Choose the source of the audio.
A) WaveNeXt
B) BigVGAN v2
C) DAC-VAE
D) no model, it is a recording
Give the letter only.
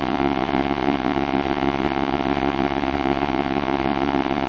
A